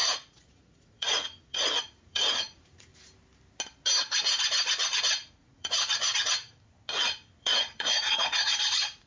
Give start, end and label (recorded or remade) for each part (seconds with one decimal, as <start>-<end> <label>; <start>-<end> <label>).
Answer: 0.0-2.9 remade; 2.9-5.3 recorded; 5.3-6.5 remade; 6.5-7.4 recorded; 7.4-9.1 remade